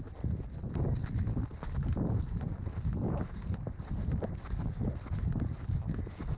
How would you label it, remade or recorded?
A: remade